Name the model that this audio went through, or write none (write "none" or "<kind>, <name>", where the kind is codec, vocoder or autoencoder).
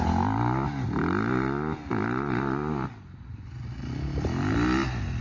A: none